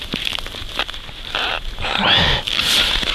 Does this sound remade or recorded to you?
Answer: recorded